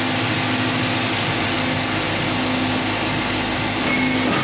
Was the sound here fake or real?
real